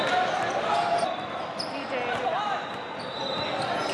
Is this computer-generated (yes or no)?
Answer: no